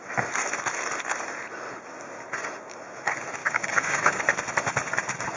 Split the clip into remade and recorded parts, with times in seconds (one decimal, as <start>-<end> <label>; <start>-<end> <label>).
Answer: 0.0-3.4 recorded; 3.4-4.2 remade; 4.2-5.4 recorded